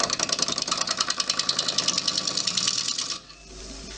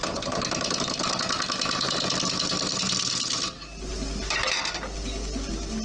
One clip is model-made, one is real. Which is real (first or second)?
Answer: second